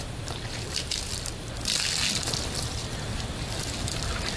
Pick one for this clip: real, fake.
real